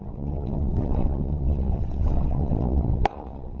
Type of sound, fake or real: fake